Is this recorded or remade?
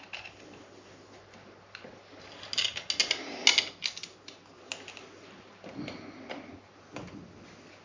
recorded